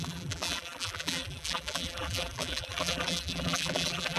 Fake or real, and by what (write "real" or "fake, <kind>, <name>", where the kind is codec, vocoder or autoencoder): fake, vocoder, BigVGAN v2